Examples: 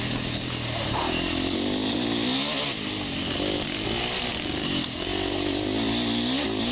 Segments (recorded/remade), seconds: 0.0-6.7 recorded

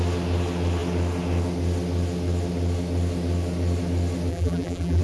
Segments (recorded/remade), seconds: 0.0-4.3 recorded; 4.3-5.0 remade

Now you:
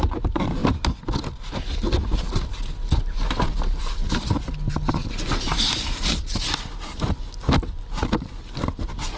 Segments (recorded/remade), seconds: 0.0-9.2 recorded

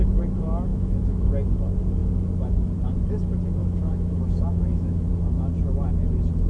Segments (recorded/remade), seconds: 0.0-0.7 recorded; 0.7-1.2 remade; 1.2-3.6 recorded; 3.6-5.1 remade; 5.1-6.5 recorded

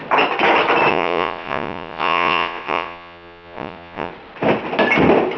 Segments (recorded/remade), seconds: 0.0-0.9 recorded; 0.9-4.1 remade; 4.1-5.4 recorded

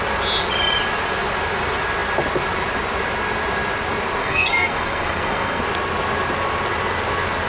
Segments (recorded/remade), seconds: 0.0-4.2 recorded; 4.2-5.6 remade; 5.6-7.5 recorded